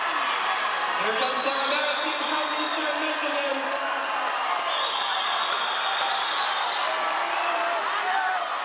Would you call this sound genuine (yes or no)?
yes